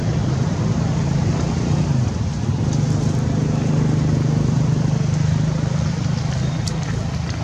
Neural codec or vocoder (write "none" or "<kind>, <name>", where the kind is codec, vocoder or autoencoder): none